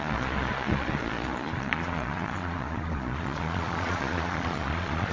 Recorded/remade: remade